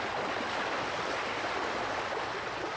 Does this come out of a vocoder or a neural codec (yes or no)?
no